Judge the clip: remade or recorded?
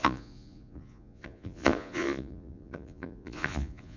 remade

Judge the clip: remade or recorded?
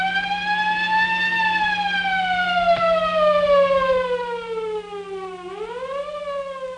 recorded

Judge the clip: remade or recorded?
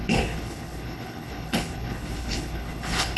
remade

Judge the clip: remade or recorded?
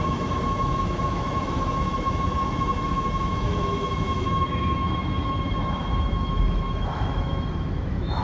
remade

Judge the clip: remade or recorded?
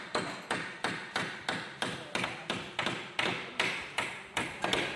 recorded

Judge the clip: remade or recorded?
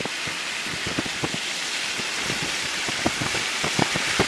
recorded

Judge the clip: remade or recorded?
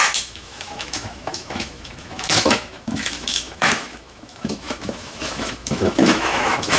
remade